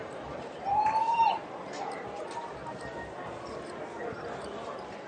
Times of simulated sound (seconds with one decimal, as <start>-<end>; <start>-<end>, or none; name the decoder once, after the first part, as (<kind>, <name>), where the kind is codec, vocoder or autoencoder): 0.0-2.4 (vocoder, BigVGAN v2)